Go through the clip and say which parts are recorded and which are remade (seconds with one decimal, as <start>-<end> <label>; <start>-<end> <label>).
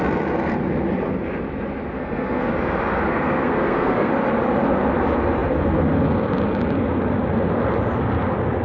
0.0-2.0 recorded; 2.0-2.5 remade; 2.5-3.1 recorded; 3.1-4.1 remade; 4.1-8.6 recorded